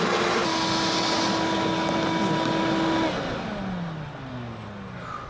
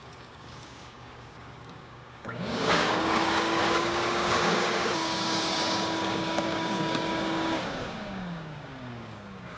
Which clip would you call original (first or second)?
first